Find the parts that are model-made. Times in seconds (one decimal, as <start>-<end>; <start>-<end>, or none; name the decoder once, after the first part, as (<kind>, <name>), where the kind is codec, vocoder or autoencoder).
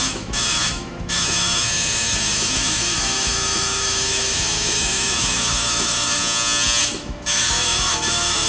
0.0-6.2 (autoencoder, DAC-VAE); 6.8-8.5